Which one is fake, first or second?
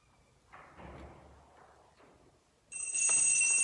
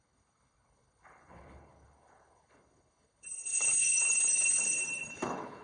second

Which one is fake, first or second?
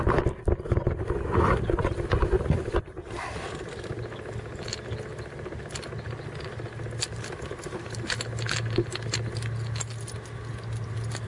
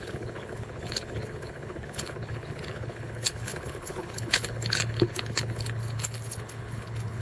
second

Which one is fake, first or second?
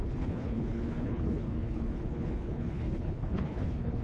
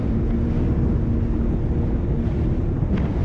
first